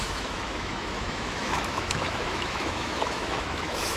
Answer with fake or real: fake